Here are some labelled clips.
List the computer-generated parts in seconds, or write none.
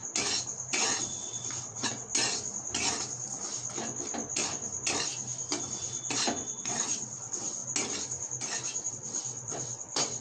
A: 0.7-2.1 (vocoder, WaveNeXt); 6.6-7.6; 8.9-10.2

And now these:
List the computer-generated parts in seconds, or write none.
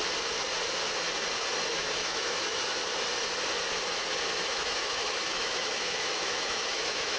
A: 1.7-2.8 (autoencoder, DAC-VAE); 4.4-7.2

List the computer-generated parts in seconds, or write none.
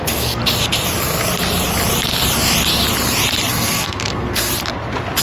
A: 0.0-0.4 (codec, SNAC); 3.5-4.5